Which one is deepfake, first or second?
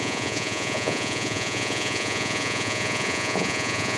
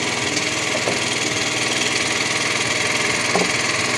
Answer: first